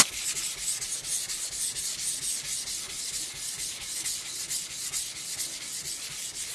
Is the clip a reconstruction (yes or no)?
no